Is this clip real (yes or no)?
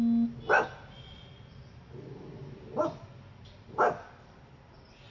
yes